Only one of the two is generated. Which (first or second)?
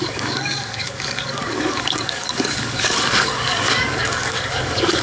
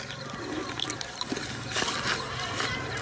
first